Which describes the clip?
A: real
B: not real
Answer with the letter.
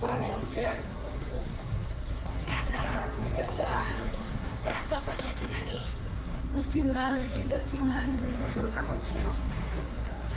B